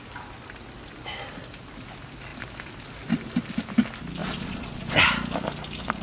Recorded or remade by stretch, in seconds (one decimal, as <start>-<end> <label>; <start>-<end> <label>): 0.0-4.2 recorded; 4.2-5.0 remade; 5.0-6.0 recorded